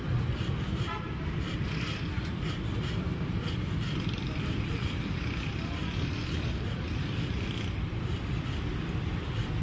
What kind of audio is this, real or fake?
fake